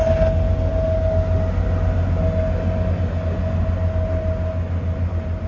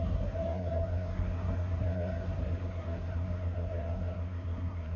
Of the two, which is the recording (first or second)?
first